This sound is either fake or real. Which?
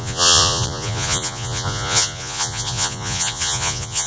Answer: fake